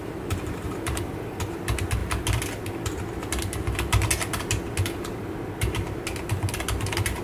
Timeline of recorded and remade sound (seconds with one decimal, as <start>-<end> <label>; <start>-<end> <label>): 0.0-1.0 remade; 1.0-7.2 recorded